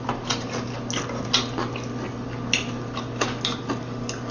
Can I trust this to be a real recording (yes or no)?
yes